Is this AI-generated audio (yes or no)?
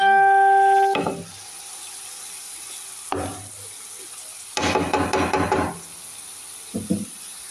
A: no